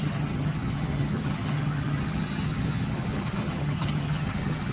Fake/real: fake